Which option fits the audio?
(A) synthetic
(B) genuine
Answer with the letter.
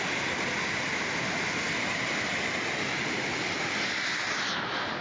B